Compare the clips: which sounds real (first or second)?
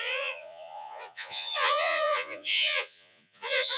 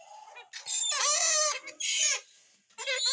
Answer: second